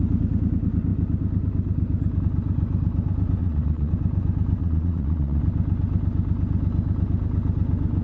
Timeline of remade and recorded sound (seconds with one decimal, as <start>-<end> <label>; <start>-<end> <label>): 0.0-3.4 recorded; 3.4-3.9 remade; 3.9-4.6 recorded; 4.6-5.4 remade; 5.4-8.0 recorded